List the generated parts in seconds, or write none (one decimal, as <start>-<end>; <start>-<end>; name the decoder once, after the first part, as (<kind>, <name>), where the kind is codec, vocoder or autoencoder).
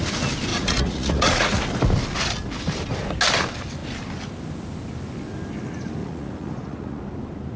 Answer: 0.5-1.6 (vocoder, Vocos); 6.0-7.0